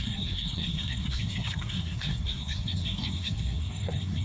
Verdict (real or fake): fake